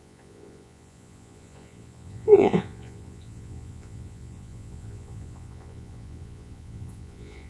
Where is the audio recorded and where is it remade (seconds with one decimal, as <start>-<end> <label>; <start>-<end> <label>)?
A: 0.0-7.5 remade